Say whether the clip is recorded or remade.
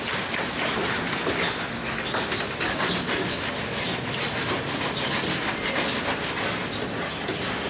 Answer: recorded